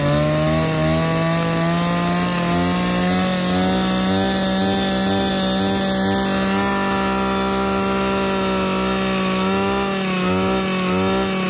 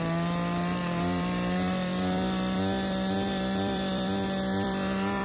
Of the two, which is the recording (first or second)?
first